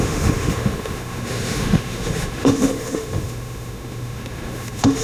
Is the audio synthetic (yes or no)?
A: yes